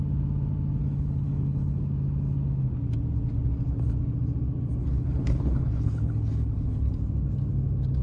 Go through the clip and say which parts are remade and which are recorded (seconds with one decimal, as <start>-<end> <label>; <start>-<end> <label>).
0.0-0.8 recorded; 0.8-1.8 remade; 1.8-4.8 recorded; 4.8-6.9 remade; 6.9-8.0 recorded